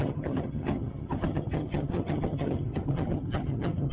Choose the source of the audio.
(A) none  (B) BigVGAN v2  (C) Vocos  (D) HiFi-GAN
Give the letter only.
D